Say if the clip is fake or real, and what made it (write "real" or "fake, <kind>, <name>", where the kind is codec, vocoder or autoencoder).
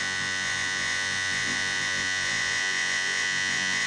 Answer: fake, vocoder, Vocos